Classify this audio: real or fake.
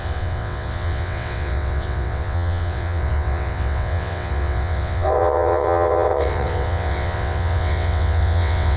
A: fake